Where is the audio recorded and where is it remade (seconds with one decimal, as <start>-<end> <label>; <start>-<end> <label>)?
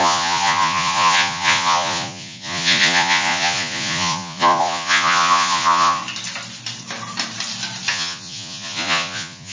0.0-6.0 remade; 6.0-7.9 recorded; 7.9-9.5 remade